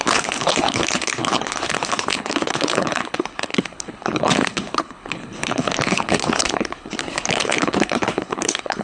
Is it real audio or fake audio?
fake